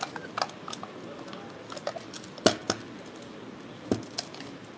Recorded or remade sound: recorded